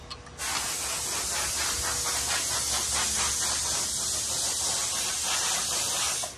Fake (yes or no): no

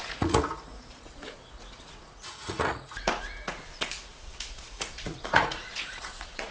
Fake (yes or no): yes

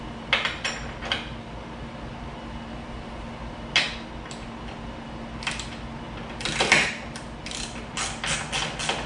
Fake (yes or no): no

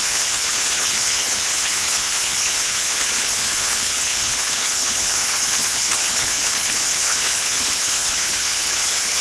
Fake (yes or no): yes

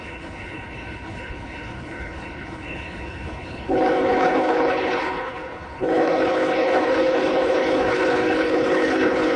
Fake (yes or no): yes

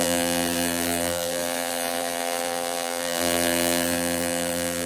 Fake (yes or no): yes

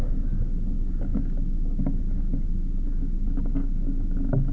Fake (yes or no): no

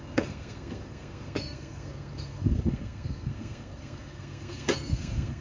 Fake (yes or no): yes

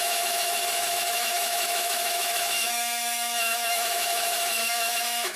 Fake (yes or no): yes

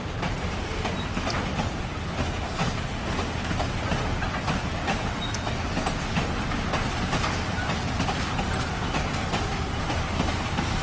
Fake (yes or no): no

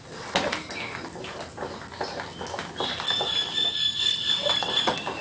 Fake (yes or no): no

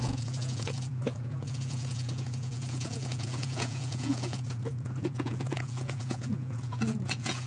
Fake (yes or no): yes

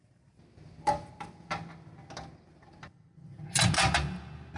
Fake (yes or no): no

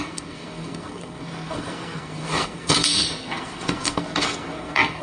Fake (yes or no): yes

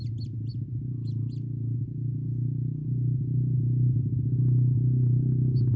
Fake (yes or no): no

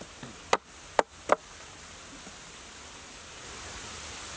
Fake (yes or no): no